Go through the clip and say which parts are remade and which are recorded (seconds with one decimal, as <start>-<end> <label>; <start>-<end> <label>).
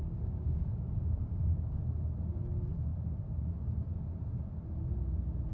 0.0-1.8 remade; 1.8-5.5 recorded